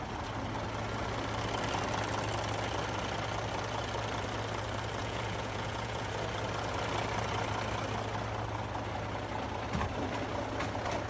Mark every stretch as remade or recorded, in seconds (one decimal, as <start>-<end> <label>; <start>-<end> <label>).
0.0-5.0 recorded; 5.0-6.1 remade; 6.1-11.1 recorded